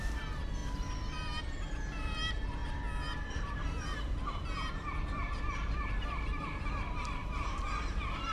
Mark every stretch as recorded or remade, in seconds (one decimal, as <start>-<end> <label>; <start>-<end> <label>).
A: 0.0-0.6 remade; 0.6-1.4 recorded; 1.4-2.6 remade; 2.6-3.3 recorded; 3.3-8.3 remade